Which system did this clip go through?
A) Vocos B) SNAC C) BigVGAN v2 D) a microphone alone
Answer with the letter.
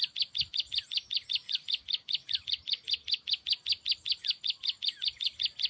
D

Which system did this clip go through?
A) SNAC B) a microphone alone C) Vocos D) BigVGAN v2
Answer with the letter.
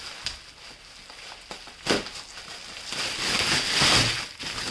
B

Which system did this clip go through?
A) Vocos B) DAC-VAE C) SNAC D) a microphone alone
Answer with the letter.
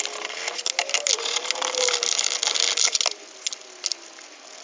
D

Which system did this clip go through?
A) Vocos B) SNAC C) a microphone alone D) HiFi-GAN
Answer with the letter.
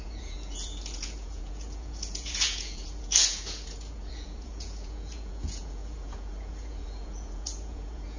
A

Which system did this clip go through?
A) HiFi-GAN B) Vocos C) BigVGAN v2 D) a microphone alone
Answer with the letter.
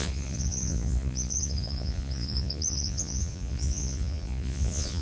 B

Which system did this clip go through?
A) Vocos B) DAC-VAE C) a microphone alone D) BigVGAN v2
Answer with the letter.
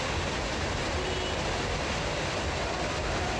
C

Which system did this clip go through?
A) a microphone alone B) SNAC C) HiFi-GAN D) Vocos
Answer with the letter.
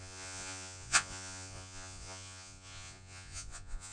D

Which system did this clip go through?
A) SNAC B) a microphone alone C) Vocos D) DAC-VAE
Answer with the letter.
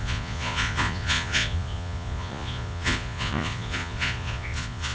C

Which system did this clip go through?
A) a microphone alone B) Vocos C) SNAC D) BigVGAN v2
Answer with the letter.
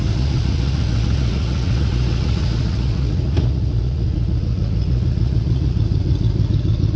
B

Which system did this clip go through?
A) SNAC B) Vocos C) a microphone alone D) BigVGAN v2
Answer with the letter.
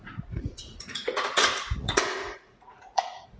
B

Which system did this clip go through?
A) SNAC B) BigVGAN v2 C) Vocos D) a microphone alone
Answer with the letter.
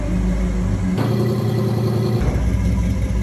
D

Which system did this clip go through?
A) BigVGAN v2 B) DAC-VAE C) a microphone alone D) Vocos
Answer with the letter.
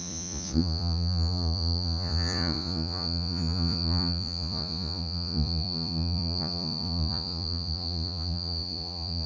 D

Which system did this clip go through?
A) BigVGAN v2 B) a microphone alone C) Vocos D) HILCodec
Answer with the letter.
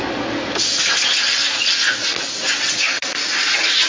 B